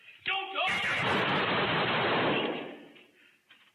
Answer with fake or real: real